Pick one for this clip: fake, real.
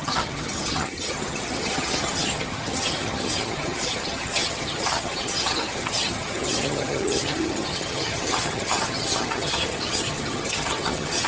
fake